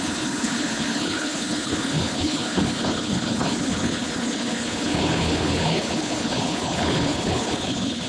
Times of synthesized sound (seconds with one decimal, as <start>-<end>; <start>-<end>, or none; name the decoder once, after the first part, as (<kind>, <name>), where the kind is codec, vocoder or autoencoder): 0.0-8.1 (codec, HILCodec)